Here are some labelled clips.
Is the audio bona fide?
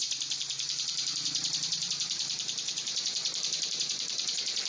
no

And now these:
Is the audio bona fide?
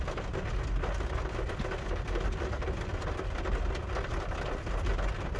yes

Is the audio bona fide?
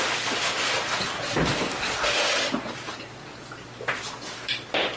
yes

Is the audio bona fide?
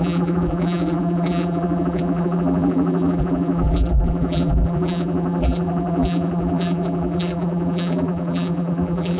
no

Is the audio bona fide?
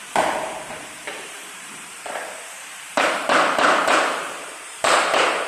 no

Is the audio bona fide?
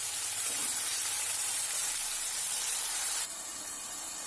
no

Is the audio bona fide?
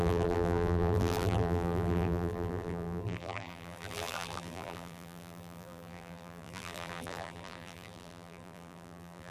no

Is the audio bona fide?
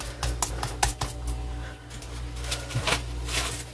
yes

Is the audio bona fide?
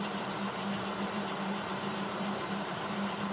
no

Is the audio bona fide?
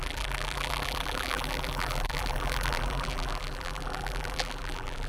no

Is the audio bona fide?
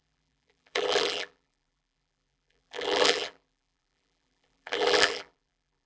no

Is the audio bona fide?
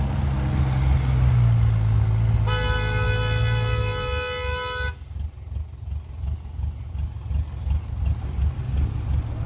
yes